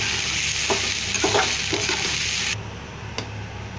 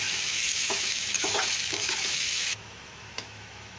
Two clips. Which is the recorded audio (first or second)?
first